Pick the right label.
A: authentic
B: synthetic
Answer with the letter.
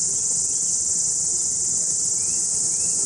A